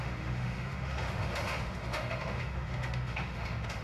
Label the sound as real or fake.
fake